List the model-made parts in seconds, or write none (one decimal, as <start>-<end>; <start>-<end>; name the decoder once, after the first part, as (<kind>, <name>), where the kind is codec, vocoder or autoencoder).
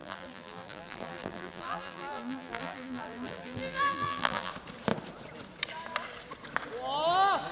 0.0-4.5 (vocoder, BigVGAN v2)